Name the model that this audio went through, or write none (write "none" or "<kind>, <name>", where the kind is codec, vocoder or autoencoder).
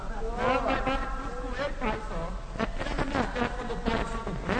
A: none